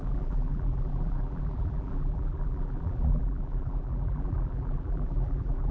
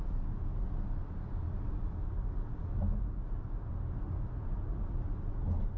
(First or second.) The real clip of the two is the second